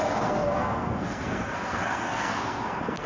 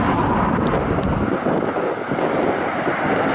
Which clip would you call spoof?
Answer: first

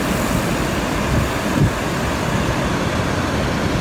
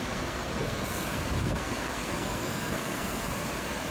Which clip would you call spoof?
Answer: second